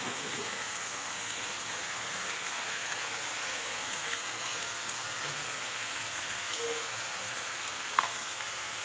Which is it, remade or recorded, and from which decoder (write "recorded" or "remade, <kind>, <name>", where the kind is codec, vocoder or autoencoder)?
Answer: remade, codec, SNAC